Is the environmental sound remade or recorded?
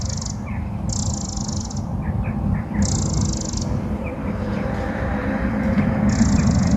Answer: recorded